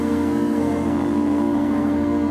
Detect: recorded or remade remade